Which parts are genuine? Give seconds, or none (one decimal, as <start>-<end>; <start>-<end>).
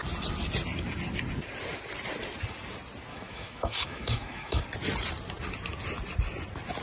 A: 0.0-3.1; 4.6-6.8